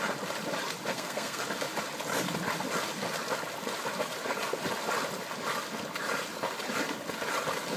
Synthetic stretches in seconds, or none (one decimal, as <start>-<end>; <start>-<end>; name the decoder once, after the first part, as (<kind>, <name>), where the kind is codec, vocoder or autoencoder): 0.9-1.4 (codec, SNAC)